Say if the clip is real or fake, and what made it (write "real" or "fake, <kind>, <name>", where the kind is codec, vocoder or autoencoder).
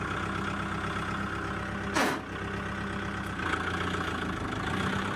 real